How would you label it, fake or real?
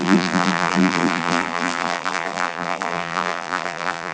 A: fake